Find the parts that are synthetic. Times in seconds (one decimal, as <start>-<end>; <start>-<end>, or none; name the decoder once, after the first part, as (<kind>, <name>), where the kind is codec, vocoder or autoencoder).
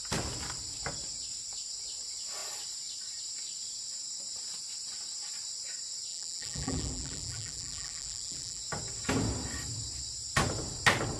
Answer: 6.1-8.6 (vocoder, BigVGAN v2)